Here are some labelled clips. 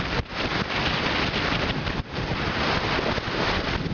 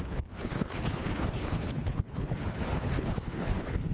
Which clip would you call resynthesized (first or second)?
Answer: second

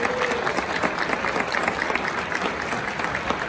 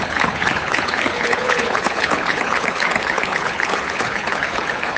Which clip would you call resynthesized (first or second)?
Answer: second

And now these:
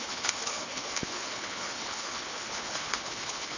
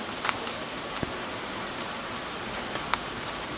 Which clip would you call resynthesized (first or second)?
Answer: first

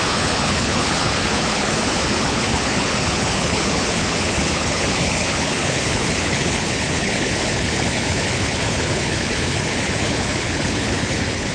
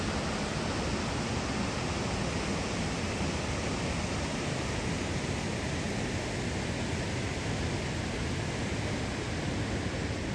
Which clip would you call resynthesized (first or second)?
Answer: first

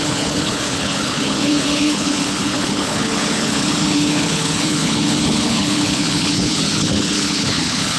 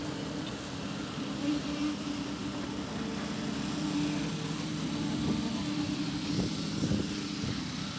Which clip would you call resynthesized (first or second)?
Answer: first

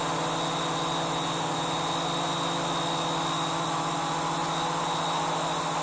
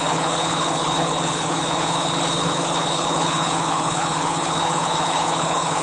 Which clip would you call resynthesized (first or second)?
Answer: second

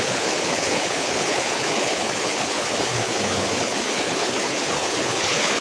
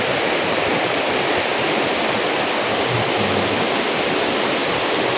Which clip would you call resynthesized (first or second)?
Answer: first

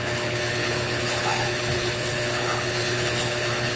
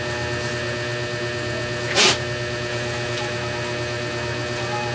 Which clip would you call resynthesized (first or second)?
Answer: first